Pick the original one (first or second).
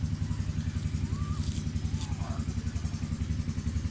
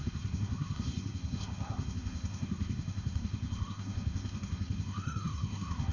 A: first